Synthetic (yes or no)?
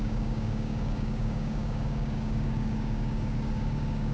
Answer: yes